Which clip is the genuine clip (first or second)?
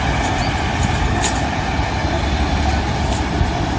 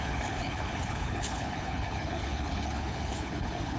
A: first